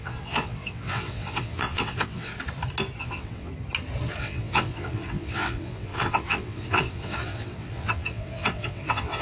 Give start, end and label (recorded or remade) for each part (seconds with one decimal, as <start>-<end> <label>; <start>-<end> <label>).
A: 0.0-2.3 remade; 2.3-3.0 recorded; 3.0-3.5 remade; 3.5-4.2 recorded; 4.2-9.2 remade